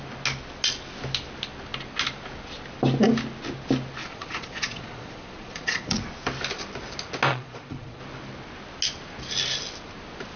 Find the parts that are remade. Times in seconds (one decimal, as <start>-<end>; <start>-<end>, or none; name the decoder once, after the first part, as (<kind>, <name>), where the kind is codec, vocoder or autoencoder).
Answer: 4.0-6.1 (vocoder, Vocos); 7.3-8.0